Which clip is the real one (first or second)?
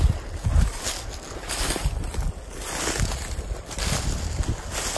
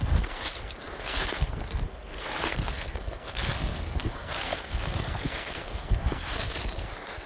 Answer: first